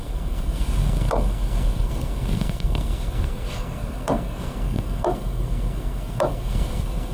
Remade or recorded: remade